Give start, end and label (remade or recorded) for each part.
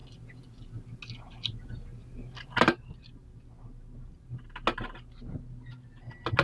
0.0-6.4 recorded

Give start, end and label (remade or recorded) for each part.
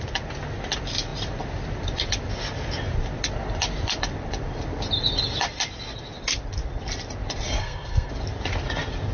0.0-7.6 recorded; 7.6-8.1 remade; 8.1-9.1 recorded